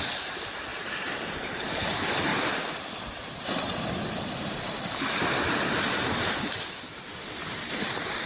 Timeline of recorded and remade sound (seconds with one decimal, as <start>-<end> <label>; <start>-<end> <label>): 0.0-0.7 recorded; 0.7-1.8 remade; 1.8-2.3 recorded; 2.3-6.0 remade; 6.0-7.4 recorded; 7.4-8.3 remade